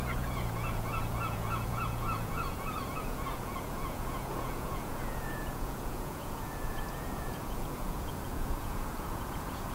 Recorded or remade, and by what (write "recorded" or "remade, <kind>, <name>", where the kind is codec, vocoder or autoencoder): remade, vocoder, Vocos